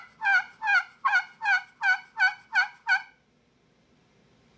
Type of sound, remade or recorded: recorded